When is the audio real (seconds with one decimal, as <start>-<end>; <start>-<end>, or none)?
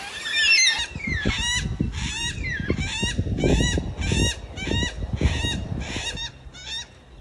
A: 0.0-7.2